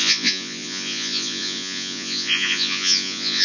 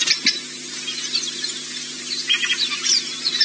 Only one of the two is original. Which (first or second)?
second